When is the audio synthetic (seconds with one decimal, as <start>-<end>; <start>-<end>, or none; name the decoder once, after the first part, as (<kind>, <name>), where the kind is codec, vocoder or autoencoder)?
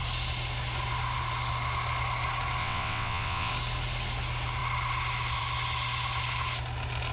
2.6-3.5 (vocoder, WaveNeXt)